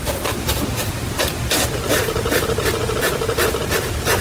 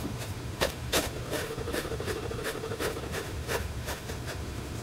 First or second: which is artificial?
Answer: second